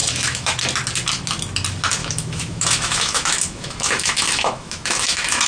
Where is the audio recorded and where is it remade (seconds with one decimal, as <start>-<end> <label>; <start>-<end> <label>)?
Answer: 0.0-0.6 remade; 0.6-2.0 recorded; 2.0-5.5 remade